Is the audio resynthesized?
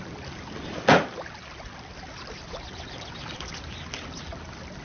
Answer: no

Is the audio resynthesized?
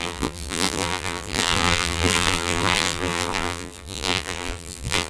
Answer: yes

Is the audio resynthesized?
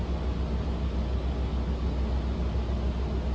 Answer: no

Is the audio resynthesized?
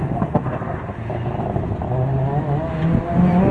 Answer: no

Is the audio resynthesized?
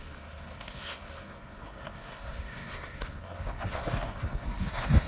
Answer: yes